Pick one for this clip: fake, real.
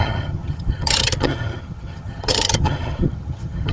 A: fake